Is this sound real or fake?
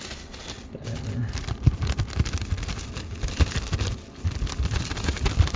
real